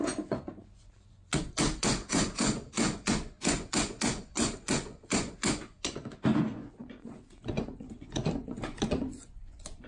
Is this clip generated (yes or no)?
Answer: yes